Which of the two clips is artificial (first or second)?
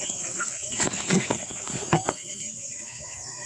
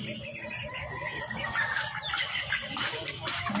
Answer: first